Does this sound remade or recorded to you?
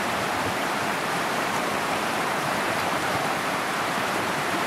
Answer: remade